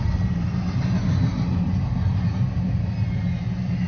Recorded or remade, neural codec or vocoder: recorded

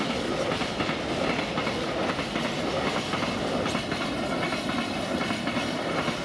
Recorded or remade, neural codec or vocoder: recorded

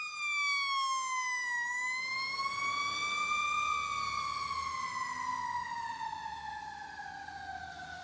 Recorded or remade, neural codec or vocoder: recorded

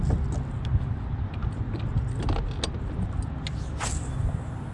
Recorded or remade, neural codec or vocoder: recorded